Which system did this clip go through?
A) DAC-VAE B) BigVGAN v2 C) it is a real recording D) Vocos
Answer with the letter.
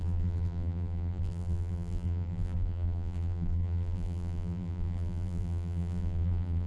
B